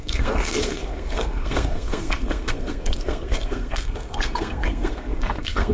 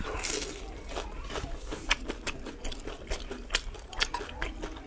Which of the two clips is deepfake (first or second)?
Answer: first